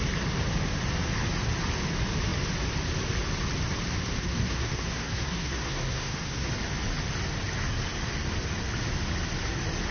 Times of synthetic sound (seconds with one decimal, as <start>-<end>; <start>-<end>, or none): 4.2-6.5